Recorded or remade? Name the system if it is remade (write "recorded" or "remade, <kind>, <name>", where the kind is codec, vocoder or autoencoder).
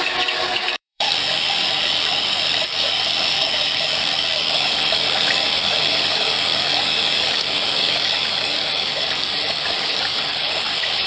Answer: remade, codec, DAC